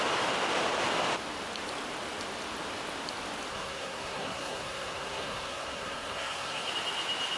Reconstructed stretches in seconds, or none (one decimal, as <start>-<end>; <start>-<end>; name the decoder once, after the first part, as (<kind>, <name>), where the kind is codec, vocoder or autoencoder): 3.5-6.7 (codec, SNAC)